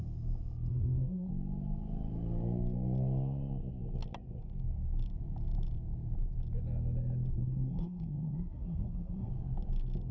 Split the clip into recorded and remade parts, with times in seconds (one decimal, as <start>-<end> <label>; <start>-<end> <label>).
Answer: 0.0-0.7 recorded; 0.7-1.3 remade; 1.3-7.3 recorded; 7.3-9.3 remade; 9.3-10.1 recorded